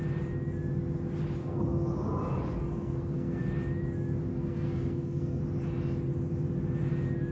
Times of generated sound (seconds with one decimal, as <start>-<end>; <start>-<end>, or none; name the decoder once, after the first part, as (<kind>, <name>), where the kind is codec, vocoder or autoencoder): 1.4-1.9 (codec, SNAC); 2.6-3.4; 4.3-5.4